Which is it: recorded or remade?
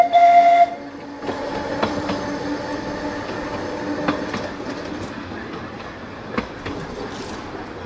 recorded